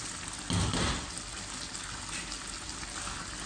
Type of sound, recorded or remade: recorded